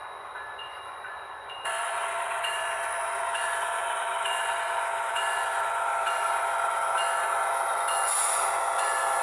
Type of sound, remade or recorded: remade